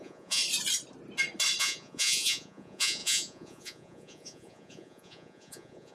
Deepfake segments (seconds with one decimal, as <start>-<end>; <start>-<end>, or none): 0.0-0.4; 1.6-5.9